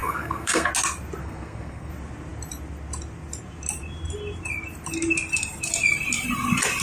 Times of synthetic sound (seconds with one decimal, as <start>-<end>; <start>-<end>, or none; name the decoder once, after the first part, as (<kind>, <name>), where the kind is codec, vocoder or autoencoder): 0.0-0.7 (codec, SNAC); 1.2-1.9